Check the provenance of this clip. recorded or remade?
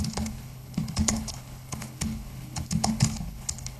remade